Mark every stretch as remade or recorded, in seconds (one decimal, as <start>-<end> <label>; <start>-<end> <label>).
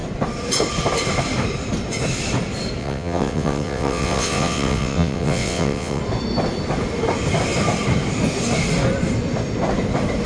0.0-2.8 recorded; 2.8-6.0 remade; 6.0-10.3 recorded